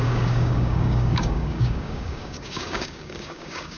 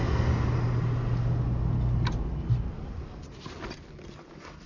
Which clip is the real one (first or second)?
second